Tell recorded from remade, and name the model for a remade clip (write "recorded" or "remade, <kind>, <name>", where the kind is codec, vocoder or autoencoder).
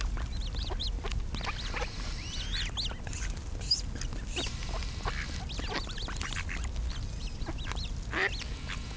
recorded